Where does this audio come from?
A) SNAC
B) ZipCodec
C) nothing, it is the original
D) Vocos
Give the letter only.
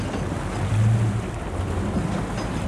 C